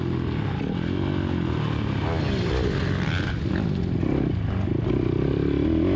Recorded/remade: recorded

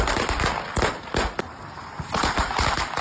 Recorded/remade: recorded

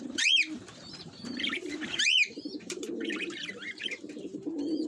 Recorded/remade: remade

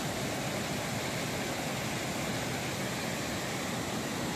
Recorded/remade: recorded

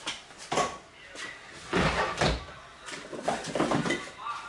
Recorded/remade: recorded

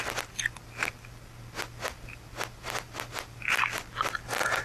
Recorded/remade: recorded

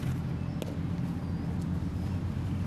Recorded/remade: recorded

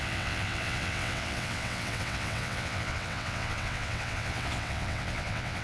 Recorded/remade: remade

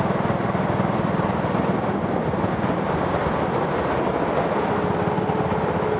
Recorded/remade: recorded